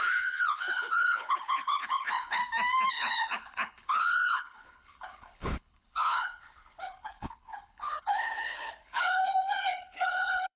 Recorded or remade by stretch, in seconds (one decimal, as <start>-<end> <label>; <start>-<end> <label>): 0.0-2.4 remade; 2.4-2.9 recorded; 2.9-10.6 remade